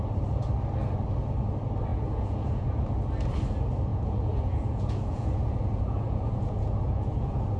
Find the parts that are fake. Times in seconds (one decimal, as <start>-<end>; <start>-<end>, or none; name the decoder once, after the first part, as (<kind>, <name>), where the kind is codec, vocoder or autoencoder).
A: 1.9-2.8 (vocoder, Vocos); 3.9-7.6